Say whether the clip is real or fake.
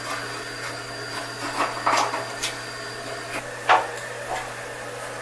real